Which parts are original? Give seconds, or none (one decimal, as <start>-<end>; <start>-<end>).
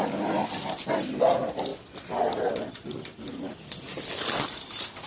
0.0-5.1